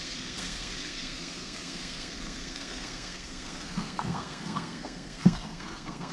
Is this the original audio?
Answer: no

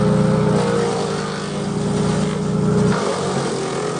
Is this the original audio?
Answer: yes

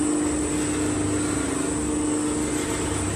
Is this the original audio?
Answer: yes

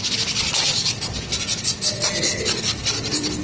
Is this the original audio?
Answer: yes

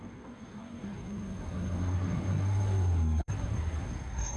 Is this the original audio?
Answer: no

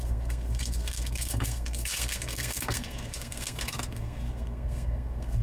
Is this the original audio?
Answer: no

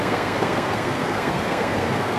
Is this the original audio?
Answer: no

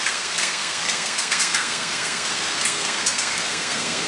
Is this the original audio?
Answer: no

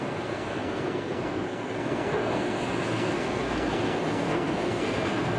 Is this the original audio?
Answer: no